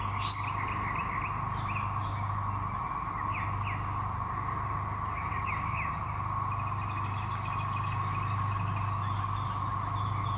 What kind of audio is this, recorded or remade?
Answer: recorded